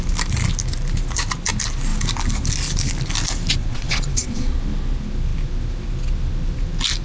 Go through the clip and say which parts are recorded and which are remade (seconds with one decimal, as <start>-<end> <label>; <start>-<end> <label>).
0.0-3.6 recorded; 3.6-4.5 remade; 4.5-7.0 recorded